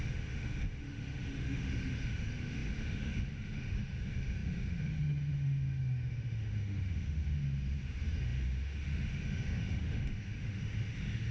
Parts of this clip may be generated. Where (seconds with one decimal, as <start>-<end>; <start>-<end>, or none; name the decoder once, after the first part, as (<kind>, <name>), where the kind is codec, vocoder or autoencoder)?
0.0-11.3 (autoencoder, DAC-VAE)